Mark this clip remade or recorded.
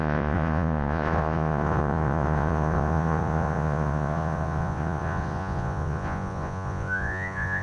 remade